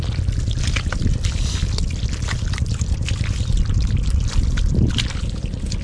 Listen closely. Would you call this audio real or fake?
real